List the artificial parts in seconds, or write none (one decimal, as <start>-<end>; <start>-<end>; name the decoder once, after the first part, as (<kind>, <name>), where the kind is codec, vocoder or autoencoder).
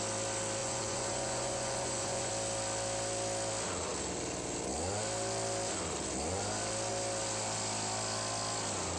0.6-2.3 (vocoder, Vocos)